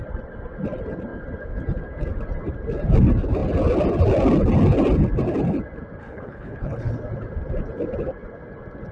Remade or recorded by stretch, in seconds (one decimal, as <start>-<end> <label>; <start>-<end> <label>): 0.0-6.0 recorded; 6.0-6.9 remade; 6.9-8.9 recorded